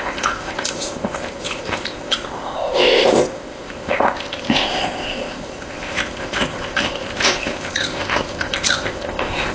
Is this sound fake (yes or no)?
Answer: yes